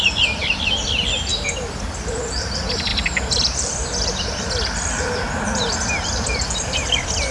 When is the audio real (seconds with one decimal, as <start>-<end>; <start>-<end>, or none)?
1.3-2.3